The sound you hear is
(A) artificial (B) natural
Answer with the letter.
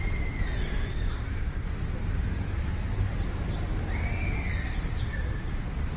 B